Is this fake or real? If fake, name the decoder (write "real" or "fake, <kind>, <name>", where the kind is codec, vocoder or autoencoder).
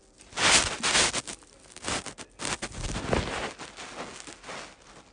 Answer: real